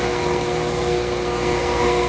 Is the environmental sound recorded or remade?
remade